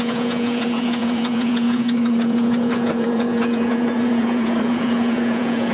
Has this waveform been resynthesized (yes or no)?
yes